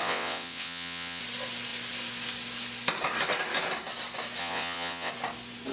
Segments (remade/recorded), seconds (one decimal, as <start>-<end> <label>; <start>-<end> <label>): 0.0-1.2 remade; 1.2-4.4 recorded; 4.4-5.1 remade; 5.1-5.7 recorded